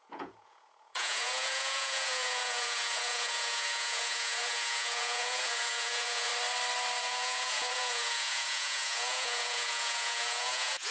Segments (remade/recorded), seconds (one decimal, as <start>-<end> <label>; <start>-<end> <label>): 0.0-6.3 remade; 6.3-7.0 recorded; 7.0-10.9 remade